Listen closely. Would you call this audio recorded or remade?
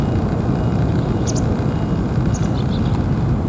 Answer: recorded